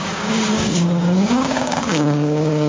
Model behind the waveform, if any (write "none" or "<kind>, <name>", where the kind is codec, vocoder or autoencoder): codec, DAC